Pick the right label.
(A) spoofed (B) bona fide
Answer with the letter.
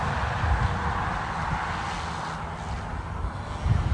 B